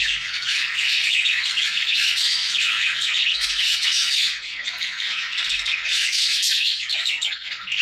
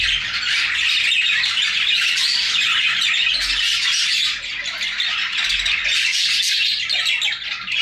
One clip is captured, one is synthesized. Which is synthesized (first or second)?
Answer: first